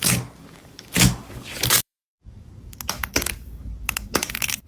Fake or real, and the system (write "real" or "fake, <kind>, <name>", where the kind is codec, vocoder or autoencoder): fake, codec, DAC